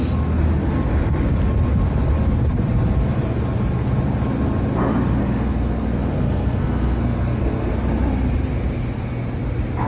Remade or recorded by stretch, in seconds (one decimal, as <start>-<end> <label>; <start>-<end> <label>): 0.0-5.2 recorded; 5.2-7.7 remade; 7.7-9.9 recorded